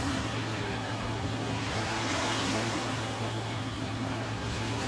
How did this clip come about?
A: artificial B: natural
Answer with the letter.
A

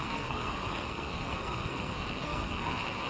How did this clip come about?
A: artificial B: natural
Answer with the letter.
A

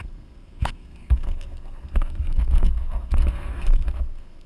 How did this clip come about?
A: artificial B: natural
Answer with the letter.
A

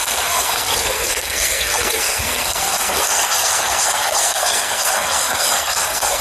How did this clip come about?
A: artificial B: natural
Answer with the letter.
A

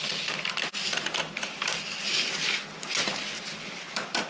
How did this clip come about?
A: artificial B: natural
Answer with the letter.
B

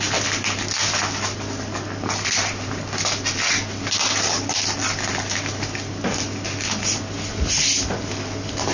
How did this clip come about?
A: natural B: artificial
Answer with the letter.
A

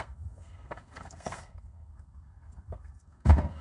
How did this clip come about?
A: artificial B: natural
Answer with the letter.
A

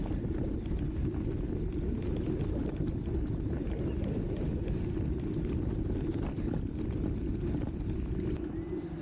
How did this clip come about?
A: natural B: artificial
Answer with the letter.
A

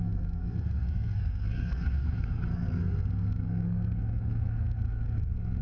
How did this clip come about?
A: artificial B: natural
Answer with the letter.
A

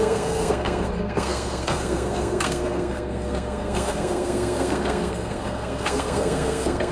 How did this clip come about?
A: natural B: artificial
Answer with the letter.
B